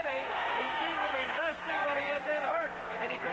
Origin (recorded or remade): remade